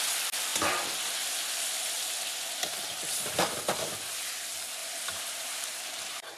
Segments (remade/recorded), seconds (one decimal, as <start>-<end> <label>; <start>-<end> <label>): 0.0-4.8 recorded; 4.8-5.8 remade; 5.8-6.4 recorded